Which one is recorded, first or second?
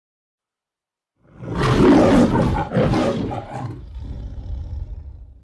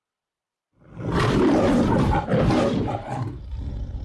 first